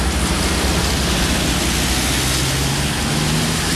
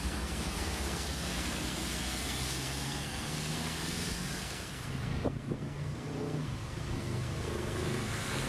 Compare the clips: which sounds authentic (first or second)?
first